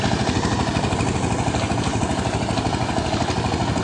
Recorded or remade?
recorded